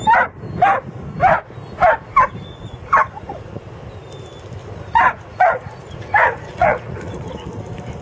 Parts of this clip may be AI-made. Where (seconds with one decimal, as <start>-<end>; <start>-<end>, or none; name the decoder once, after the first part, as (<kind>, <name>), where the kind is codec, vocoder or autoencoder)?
2.4-3.6 (vocoder, Vocos); 4.6-7.3